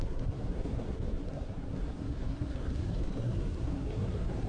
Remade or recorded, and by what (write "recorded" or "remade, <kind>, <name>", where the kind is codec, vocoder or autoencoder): remade, codec, SNAC